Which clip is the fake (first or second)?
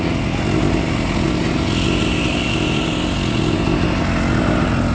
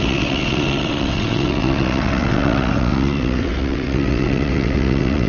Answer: second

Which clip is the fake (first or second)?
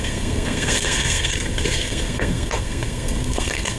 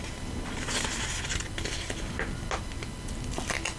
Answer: first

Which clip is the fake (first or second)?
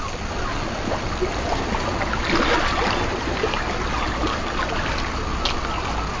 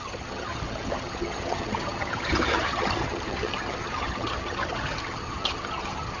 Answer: second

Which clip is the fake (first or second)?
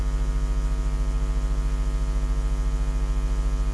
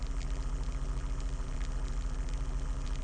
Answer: second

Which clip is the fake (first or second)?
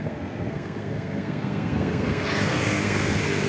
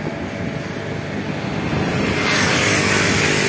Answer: first